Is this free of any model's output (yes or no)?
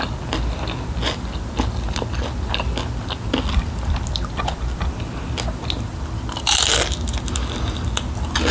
yes